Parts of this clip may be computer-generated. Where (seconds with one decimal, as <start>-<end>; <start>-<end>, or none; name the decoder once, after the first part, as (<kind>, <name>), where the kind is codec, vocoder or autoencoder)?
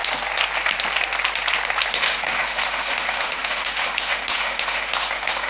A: 1.9-5.5 (autoencoder, DAC-VAE)